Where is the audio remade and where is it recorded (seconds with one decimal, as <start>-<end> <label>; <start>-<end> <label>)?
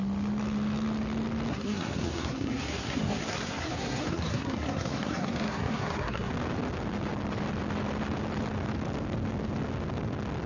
0.0-1.5 recorded; 1.5-6.3 remade; 6.3-10.5 recorded